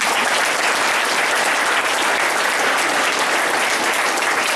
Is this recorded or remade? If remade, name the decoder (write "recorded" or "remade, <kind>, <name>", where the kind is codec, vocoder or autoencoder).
recorded